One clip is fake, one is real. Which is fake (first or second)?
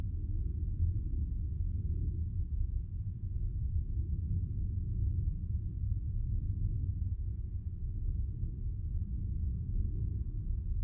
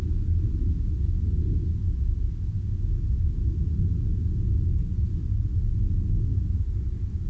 first